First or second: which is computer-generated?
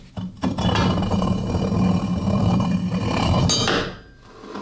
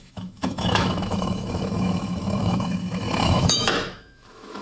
second